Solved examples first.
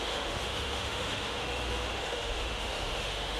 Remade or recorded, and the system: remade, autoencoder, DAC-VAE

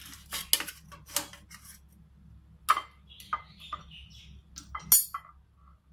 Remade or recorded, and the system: recorded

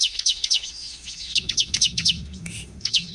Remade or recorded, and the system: remade, autoencoder, DAC-VAE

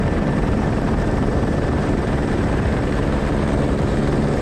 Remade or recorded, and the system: remade, vocoder, BigVGAN v2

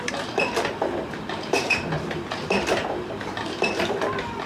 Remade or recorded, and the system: remade, vocoder, BigVGAN v2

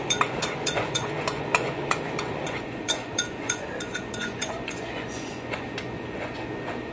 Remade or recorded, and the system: remade, vocoder, Vocos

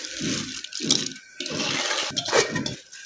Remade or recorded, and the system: recorded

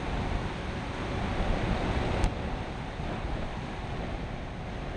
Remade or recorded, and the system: recorded